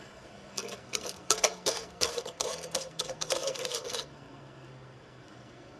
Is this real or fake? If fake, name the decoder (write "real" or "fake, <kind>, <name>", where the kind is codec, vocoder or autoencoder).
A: fake, codec, SNAC